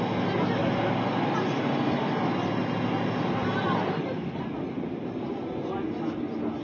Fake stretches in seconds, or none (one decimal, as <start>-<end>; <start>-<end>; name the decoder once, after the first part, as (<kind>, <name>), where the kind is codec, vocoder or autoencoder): none